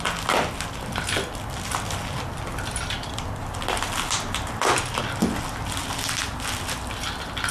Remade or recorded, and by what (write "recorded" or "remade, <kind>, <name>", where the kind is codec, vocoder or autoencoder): recorded